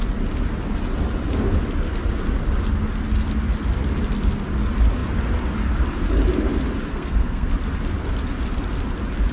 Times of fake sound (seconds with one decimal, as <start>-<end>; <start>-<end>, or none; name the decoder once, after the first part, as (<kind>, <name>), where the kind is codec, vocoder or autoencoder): 6.9-7.5 (codec, SNAC)